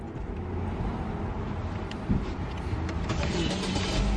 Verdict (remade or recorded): recorded